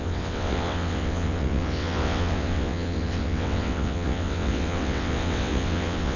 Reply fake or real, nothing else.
fake